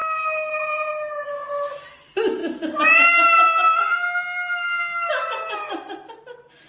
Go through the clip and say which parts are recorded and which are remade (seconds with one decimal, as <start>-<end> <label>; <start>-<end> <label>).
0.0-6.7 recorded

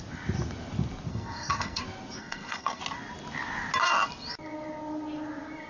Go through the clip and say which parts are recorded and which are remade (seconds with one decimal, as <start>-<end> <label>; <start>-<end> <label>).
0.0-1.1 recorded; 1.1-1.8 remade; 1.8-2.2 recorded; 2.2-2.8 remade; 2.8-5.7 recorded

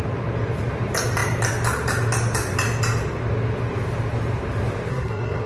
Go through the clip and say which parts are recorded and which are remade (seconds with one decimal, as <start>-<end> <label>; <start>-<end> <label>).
0.0-4.9 recorded; 4.9-5.5 remade

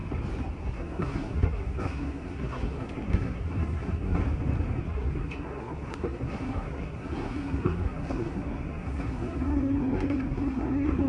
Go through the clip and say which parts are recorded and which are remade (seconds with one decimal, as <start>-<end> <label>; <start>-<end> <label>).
0.0-0.6 recorded; 0.6-4.2 remade; 4.2-4.8 recorded; 4.8-11.1 remade